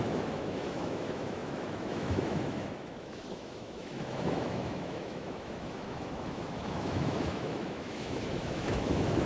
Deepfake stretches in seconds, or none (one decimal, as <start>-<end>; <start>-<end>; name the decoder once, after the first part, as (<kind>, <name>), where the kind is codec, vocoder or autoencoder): 0.0-9.3 (autoencoder, DAC-VAE)